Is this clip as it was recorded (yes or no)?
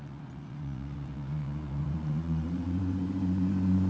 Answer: no